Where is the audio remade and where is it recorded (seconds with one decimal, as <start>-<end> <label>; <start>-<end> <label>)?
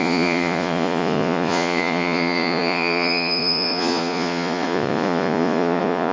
0.0-6.1 remade